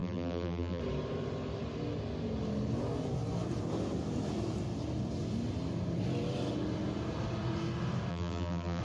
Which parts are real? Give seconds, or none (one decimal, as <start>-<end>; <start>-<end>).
0.8-8.1